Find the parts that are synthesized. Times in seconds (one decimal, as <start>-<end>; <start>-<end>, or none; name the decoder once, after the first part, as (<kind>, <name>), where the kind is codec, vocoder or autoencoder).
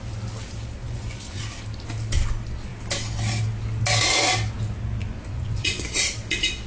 0.8-1.4 (vocoder, Vocos); 5.0-5.9